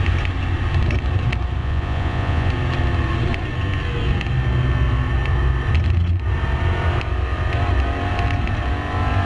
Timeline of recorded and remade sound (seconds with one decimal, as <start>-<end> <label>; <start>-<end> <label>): 0.0-1.6 recorded; 1.6-2.5 remade; 2.5-9.2 recorded